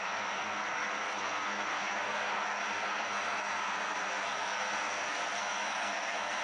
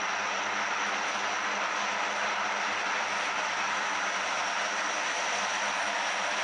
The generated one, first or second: first